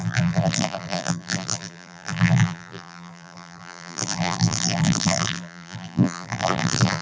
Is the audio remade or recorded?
remade